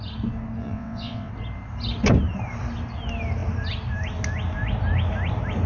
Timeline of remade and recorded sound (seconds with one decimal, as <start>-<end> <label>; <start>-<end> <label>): 0.0-0.6 recorded; 0.6-1.3 remade; 1.3-5.7 recorded